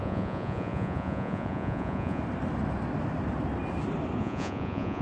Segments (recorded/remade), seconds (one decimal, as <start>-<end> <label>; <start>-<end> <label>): 0.0-2.2 remade; 2.2-4.2 recorded; 4.2-5.0 remade